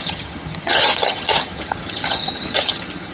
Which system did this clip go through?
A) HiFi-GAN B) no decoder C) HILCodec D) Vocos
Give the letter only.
A